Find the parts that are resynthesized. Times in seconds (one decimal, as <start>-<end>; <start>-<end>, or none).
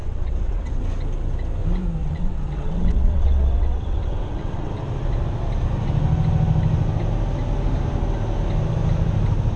0.0-0.8; 2.0-4.7